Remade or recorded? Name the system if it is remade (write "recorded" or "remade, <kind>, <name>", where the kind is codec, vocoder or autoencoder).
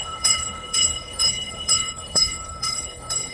remade, codec, HILCodec